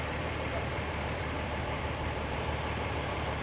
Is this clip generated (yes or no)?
yes